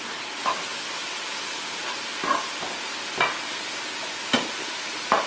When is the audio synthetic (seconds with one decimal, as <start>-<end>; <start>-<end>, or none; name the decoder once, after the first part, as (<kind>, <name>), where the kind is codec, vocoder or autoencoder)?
none